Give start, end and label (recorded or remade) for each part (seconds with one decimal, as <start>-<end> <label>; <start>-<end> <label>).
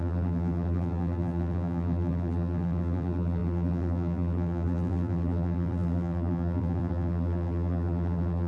0.0-8.5 remade